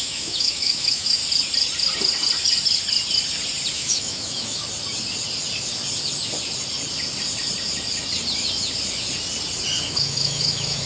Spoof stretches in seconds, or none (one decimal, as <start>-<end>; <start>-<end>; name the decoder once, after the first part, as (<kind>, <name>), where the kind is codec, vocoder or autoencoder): 0.0-1.2 (autoencoder, DAC-VAE); 3.7-4.6; 9.8-10.9